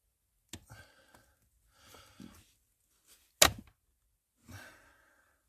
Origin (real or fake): real